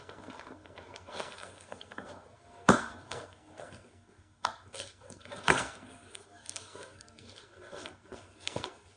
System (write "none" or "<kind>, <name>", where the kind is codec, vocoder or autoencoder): codec, SNAC